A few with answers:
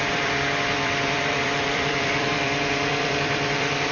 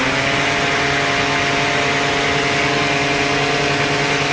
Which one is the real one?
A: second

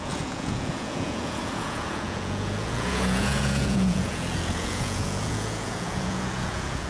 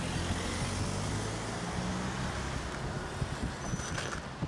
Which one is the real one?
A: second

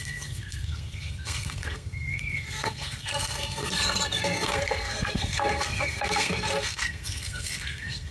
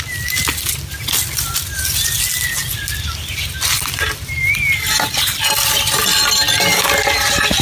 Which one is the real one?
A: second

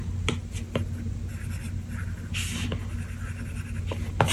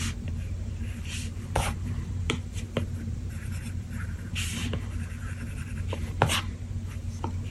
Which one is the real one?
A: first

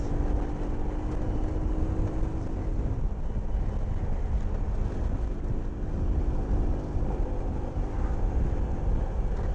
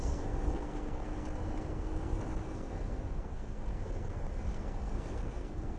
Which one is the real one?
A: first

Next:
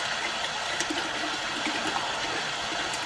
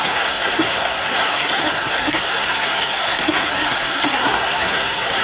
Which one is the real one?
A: first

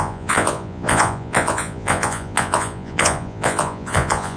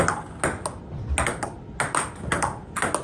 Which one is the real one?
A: second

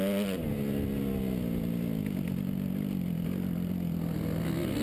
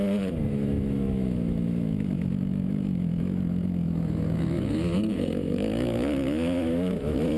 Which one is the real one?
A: first